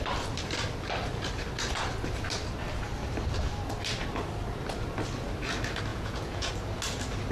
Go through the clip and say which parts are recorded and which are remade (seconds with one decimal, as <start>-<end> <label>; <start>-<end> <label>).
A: 0.0-5.9 recorded; 5.9-6.5 remade; 6.5-7.3 recorded